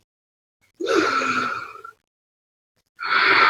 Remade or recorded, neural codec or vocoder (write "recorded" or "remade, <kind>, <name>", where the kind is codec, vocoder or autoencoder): recorded